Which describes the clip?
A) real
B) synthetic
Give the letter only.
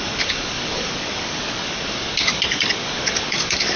B